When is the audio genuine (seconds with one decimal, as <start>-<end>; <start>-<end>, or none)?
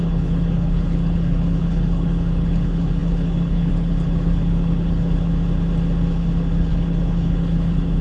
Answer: 5.3-6.1